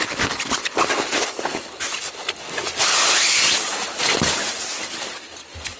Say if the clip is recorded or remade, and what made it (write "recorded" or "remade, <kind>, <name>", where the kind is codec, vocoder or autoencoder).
recorded